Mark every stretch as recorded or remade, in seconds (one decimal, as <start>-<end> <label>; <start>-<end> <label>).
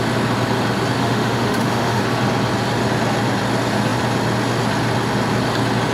0.0-1.0 recorded; 1.0-2.0 remade; 2.0-5.9 recorded